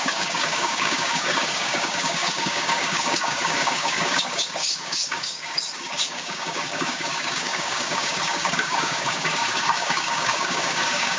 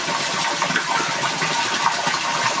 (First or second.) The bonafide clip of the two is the second